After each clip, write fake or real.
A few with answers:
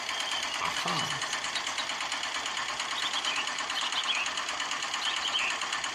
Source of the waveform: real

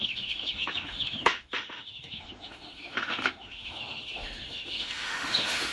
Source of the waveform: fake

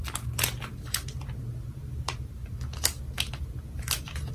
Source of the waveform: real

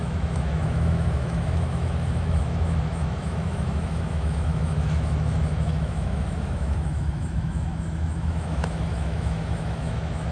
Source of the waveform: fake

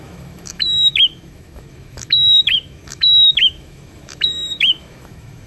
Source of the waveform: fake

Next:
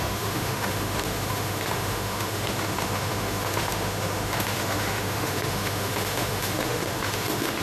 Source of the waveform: fake